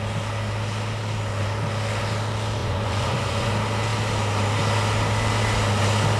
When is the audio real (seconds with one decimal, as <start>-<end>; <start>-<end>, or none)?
0.0-2.6; 3.5-6.2